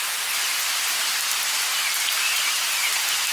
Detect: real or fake real